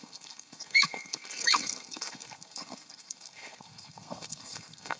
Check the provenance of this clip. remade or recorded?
remade